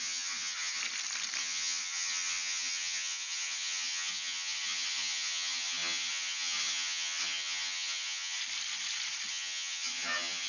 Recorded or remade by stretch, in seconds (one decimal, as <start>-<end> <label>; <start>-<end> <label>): 0.0-0.8 remade; 0.8-1.4 recorded; 1.4-8.4 remade; 8.4-9.3 recorded; 9.3-10.5 remade